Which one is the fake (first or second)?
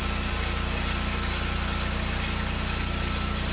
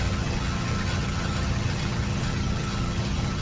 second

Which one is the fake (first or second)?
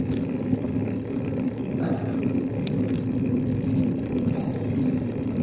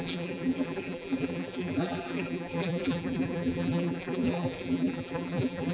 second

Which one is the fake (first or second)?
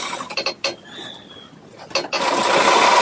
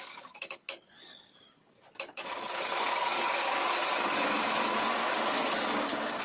second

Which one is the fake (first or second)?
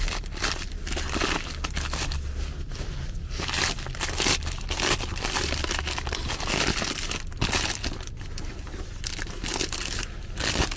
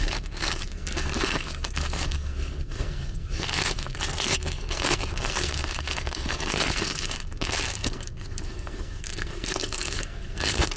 second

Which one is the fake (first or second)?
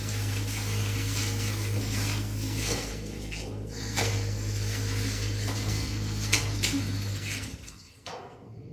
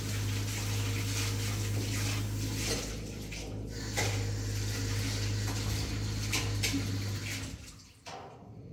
first